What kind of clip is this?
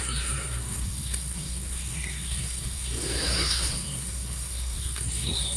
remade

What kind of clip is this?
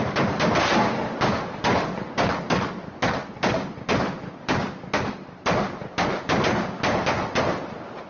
recorded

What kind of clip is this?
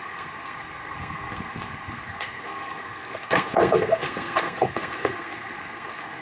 remade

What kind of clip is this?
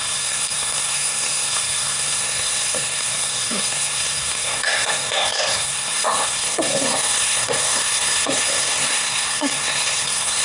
remade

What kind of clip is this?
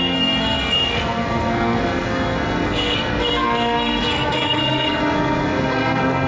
remade